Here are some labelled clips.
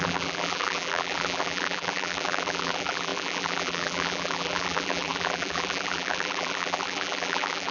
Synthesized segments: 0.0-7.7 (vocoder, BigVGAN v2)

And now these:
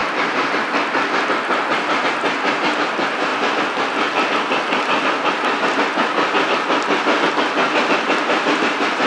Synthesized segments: 8.2-9.1 (vocoder, BigVGAN v2)